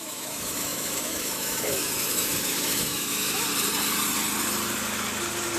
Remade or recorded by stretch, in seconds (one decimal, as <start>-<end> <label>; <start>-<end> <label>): 0.0-3.5 remade; 3.5-5.6 recorded